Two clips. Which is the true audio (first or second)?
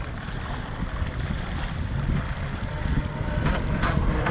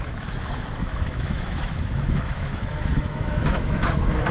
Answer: first